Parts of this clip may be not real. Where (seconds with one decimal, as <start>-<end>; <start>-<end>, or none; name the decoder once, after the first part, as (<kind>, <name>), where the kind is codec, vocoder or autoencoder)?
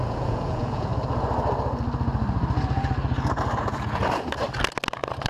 0.0-0.9 (vocoder, Vocos); 3.6-4.0